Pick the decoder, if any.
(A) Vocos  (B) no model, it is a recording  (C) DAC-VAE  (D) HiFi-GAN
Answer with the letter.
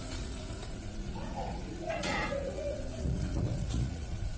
A